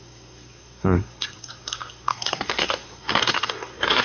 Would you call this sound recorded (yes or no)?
no